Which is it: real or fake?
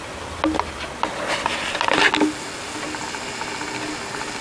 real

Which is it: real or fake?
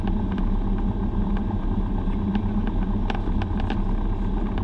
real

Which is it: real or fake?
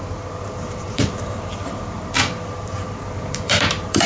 fake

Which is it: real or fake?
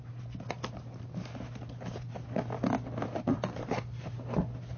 real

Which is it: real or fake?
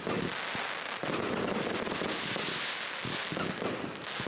real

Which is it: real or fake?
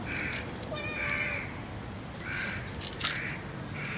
real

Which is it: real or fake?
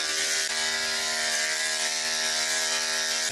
real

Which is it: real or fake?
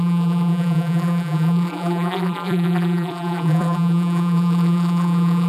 fake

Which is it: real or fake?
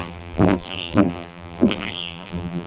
fake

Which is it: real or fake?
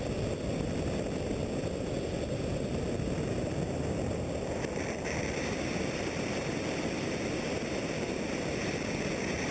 real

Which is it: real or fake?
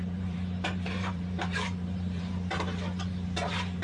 fake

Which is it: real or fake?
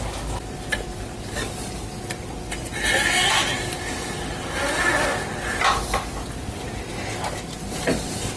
real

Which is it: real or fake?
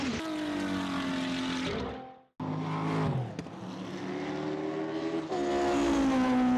real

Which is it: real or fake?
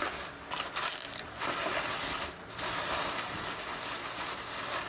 real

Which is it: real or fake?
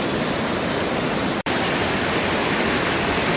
fake